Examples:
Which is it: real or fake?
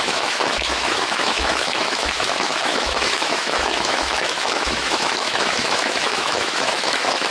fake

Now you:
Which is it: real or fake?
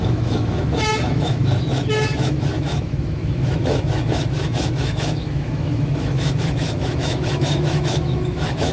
fake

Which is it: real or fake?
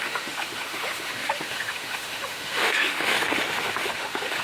fake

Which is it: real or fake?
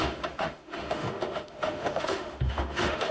fake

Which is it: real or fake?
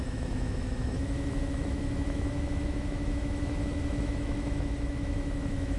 fake